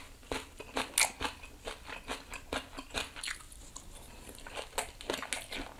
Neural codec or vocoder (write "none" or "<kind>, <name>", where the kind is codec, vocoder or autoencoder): none